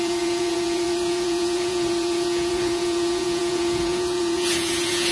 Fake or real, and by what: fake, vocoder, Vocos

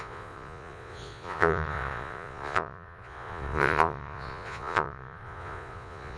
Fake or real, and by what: fake, vocoder, Vocos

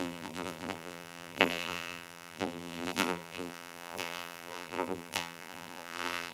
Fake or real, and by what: fake, vocoder, BigVGAN v2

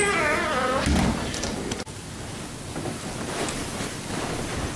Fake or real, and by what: real